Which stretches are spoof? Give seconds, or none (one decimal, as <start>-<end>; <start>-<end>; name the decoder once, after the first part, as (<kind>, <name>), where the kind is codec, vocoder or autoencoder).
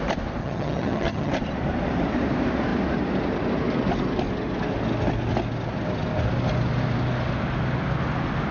0.4-1.3 (vocoder, HiFi-GAN)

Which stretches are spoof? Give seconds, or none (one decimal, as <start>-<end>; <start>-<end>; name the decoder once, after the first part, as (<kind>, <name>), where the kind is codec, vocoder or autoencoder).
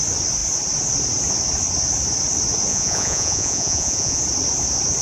2.7-4.2 (vocoder, Vocos)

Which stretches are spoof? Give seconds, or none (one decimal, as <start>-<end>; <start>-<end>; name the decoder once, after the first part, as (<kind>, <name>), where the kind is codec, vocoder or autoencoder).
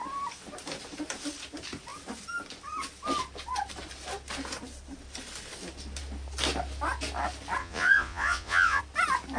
7.6-8.8 (vocoder, Vocos)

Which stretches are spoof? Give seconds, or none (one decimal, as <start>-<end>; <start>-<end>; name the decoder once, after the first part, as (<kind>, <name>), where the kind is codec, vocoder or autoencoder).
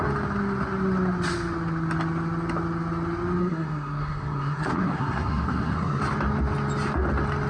3.4-6.0 (codec, SNAC)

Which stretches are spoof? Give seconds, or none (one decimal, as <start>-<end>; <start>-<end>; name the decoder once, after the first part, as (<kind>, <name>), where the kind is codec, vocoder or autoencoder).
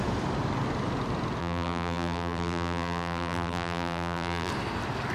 1.4-4.5 (vocoder, BigVGAN v2)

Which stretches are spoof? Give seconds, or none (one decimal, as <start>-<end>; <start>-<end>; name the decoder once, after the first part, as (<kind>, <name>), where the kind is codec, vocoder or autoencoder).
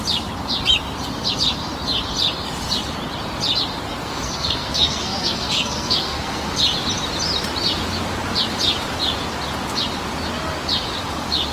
4.0-6.6 (codec, SNAC)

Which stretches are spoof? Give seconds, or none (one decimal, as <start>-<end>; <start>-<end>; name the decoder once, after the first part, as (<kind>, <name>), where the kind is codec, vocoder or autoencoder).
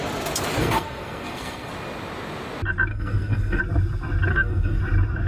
0.6-1.7 (codec, SNAC); 2.9-3.6; 4.3-4.8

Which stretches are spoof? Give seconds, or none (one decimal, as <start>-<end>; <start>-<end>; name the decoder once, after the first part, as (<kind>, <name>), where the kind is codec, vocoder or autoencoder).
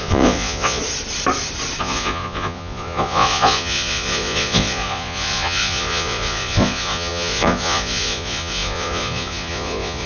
0.0-0.8 (vocoder, Vocos); 1.8-10.1